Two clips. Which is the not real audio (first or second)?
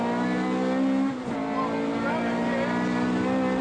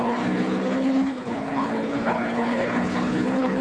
second